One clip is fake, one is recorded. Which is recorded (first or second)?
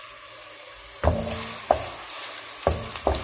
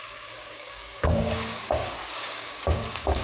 first